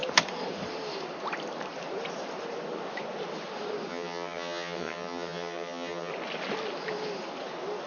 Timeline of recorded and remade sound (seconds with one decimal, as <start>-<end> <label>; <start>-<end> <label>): 0.0-3.9 recorded; 3.9-6.1 remade; 6.1-7.9 recorded